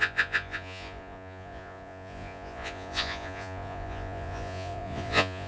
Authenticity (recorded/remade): remade